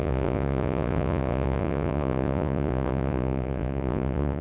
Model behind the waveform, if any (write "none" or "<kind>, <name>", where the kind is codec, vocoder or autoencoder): vocoder, Vocos